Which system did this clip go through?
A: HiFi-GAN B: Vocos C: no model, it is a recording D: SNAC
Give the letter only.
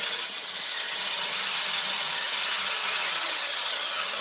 A